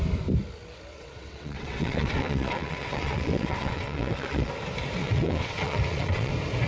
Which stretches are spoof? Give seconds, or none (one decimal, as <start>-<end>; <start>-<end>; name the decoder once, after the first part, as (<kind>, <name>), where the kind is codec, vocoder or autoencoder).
0.9-4.5 (vocoder, WaveNeXt); 5.0-6.3